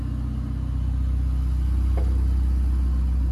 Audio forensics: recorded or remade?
recorded